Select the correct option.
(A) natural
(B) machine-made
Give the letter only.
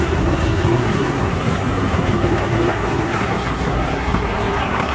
B